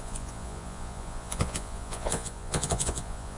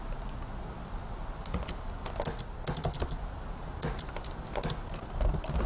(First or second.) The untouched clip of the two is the second